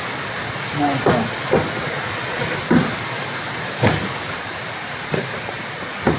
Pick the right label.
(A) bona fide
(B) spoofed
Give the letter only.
A